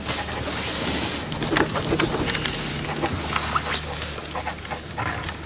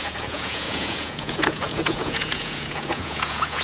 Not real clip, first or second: second